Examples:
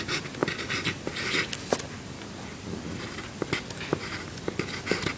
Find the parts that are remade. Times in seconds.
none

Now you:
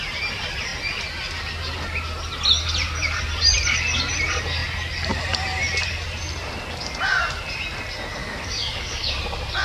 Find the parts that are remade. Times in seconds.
8.2-9.2 (codec, DAC)